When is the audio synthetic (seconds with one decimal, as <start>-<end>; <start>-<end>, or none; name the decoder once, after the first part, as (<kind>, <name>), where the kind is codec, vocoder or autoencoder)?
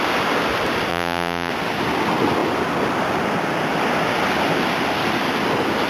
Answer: 0.9-1.5 (vocoder, BigVGAN v2)